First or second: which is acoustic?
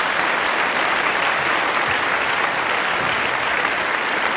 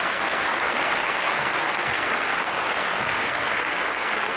first